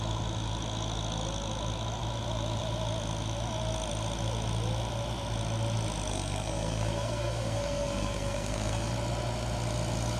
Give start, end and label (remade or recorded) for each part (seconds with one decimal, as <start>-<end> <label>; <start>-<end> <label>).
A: 0.0-6.1 recorded; 6.1-8.9 remade; 8.9-10.2 recorded